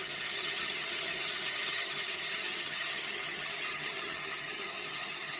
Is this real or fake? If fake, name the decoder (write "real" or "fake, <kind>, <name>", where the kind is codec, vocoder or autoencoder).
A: fake, vocoder, HiFi-GAN